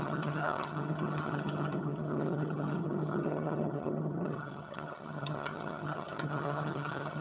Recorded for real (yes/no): no